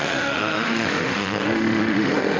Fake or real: fake